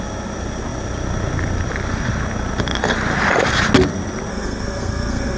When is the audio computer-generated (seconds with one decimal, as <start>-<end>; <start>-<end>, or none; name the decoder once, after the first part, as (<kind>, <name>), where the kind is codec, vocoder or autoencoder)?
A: 4.3-5.4 (codec, SNAC)